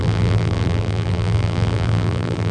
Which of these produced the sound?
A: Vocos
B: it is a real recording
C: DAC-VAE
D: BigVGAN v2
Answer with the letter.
D